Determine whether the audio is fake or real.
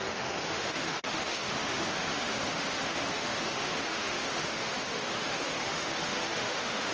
fake